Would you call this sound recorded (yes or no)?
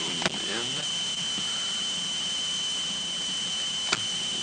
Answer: yes